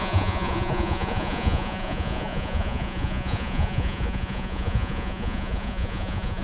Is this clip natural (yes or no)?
no